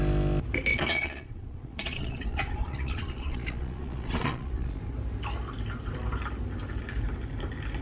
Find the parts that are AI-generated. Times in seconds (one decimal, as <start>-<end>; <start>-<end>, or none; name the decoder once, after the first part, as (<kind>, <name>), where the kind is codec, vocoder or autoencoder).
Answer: 0.7-4.8 (vocoder, Vocos)